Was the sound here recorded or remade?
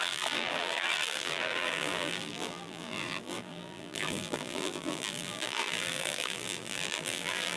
remade